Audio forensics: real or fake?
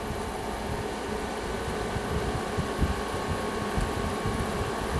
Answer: real